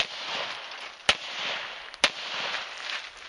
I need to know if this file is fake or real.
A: real